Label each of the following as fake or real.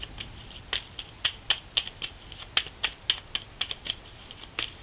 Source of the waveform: real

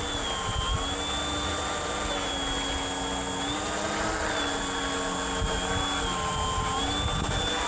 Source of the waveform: real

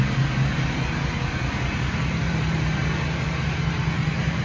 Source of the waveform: fake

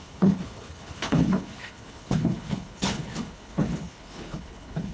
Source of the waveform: fake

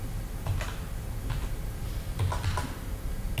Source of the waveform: real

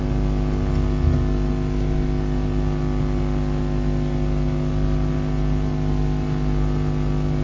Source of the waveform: real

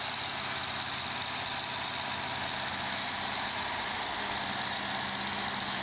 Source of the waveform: real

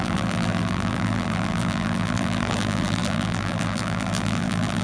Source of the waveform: fake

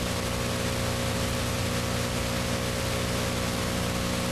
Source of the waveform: real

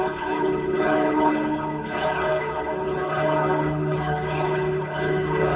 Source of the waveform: fake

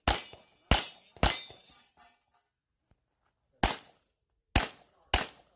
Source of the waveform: real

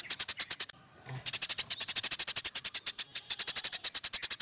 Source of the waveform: real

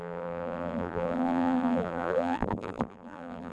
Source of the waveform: fake